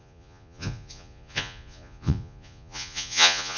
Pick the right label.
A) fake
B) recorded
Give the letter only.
A